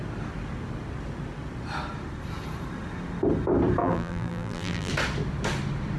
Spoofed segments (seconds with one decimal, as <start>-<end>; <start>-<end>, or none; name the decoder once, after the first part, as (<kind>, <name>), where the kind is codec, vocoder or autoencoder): 3.8-4.9 (vocoder, BigVGAN v2)